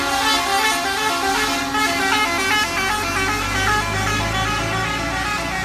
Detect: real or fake real